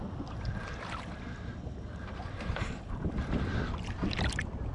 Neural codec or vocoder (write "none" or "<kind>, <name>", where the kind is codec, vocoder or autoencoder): vocoder, BigVGAN v2